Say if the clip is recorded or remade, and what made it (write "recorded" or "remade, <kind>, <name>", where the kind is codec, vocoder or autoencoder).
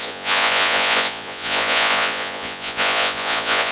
remade, vocoder, Vocos